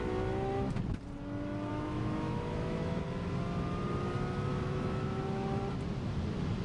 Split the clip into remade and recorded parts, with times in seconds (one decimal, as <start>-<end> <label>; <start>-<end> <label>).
0.0-1.7 recorded; 1.7-3.0 remade; 3.0-4.5 recorded; 4.5-5.2 remade; 5.2-6.6 recorded